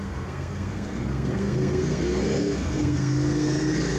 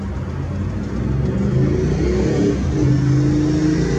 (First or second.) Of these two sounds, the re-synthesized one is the first